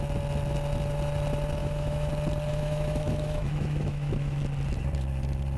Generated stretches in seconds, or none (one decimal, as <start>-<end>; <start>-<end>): 1.6-2.1; 2.5-4.4